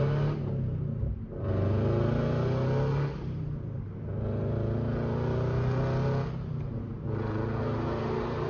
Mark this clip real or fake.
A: real